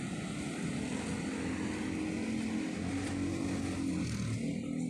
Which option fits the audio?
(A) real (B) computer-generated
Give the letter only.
A